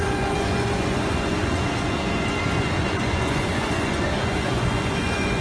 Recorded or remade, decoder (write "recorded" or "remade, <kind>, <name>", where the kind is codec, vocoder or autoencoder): remade, vocoder, Vocos